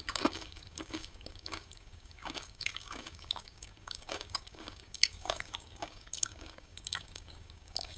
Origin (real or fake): fake